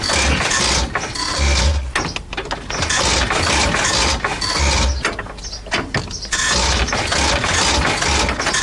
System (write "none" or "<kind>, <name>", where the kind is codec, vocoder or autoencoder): none